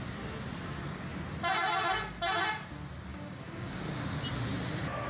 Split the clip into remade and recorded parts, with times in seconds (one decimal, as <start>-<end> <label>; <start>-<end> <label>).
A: 0.0-3.1 recorded; 3.1-3.7 remade; 3.7-5.1 recorded